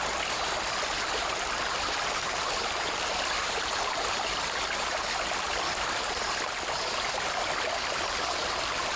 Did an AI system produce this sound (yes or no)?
no